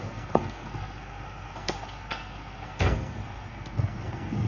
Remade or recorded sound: remade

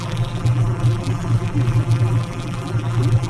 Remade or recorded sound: remade